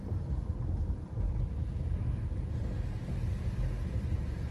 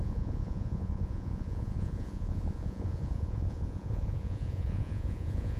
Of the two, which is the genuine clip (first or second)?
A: first